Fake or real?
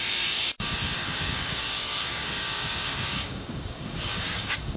fake